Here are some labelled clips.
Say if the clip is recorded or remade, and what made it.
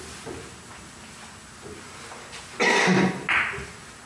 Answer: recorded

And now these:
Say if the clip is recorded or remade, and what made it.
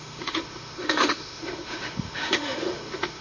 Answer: remade, autoencoder, DAC-VAE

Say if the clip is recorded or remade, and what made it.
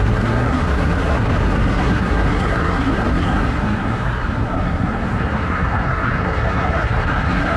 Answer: remade, codec, SNAC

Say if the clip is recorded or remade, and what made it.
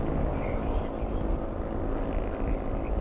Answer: recorded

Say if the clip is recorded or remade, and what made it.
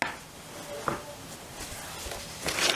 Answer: recorded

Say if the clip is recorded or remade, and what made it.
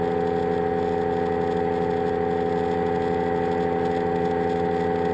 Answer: recorded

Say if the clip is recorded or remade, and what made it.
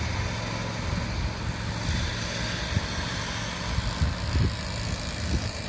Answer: recorded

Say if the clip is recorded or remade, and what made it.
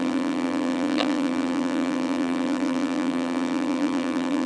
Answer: remade, vocoder, BigVGAN v2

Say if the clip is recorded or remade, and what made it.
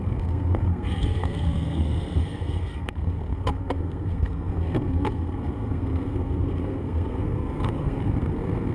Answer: remade, codec, SNAC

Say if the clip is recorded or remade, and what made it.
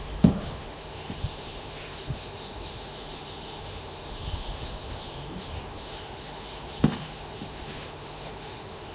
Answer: remade, autoencoder, DAC-VAE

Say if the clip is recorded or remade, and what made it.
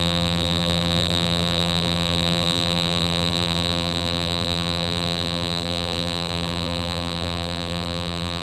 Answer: remade, vocoder, BigVGAN v2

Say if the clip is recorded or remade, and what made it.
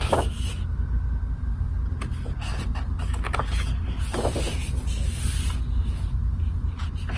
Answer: recorded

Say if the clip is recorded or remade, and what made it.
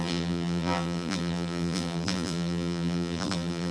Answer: remade, vocoder, BigVGAN v2